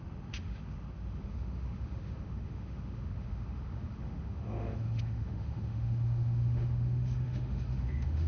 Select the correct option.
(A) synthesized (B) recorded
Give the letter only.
A